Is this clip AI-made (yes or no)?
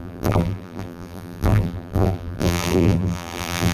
yes